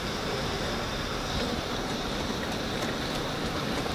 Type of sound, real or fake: fake